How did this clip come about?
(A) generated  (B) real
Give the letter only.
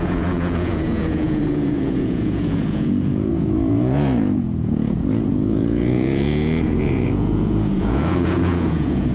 A